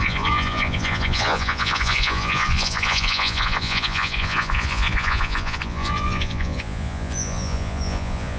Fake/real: fake